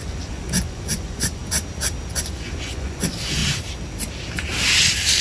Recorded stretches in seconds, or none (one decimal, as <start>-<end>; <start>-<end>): 1.4-2.1; 3.4-5.2